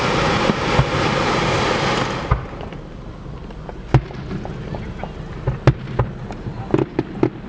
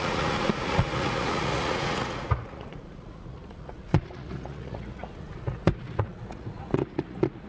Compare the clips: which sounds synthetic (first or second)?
second